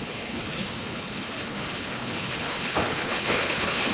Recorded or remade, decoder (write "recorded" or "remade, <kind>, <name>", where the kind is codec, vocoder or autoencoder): remade, codec, HILCodec